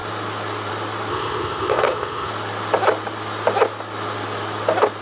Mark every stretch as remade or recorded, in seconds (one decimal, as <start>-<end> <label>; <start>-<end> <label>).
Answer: 0.0-1.1 recorded; 1.1-2.3 remade; 2.3-5.0 recorded